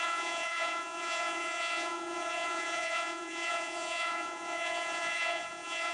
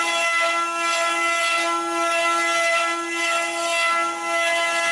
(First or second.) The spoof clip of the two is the first